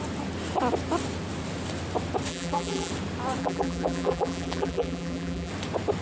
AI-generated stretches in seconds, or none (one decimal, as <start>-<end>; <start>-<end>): 2.3-2.9; 3.4-5.5